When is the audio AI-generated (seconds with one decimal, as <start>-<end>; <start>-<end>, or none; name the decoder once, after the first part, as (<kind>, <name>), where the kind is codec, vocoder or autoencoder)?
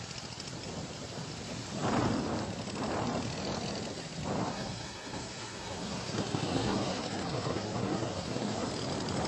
4.4-8.7 (codec, SNAC)